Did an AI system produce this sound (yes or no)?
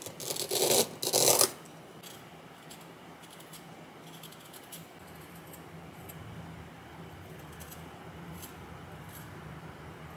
no